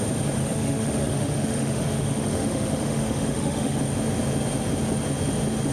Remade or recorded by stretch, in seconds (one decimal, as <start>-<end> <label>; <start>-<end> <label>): 0.0-0.4 recorded; 0.4-3.8 remade; 3.8-5.7 recorded